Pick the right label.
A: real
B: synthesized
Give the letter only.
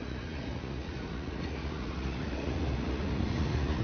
B